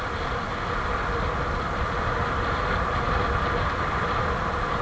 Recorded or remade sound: recorded